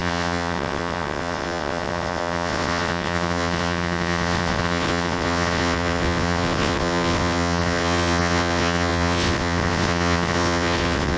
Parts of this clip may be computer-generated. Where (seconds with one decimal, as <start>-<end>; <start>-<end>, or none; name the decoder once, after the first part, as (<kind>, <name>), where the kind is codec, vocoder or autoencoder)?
0.0-11.2 (vocoder, WaveNeXt)